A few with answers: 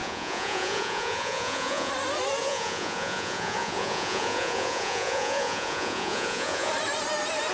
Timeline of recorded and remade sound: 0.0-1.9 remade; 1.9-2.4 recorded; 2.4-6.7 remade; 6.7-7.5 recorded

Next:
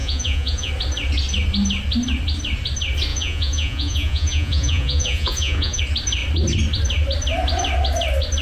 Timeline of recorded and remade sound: 0.0-0.7 remade; 0.7-3.1 recorded; 3.1-5.8 remade; 5.8-8.4 recorded